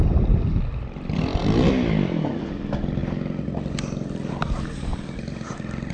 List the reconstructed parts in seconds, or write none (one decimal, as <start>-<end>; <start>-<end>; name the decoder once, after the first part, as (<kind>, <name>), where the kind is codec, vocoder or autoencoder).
none